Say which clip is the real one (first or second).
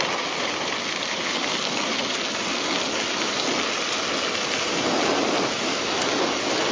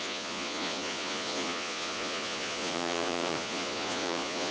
first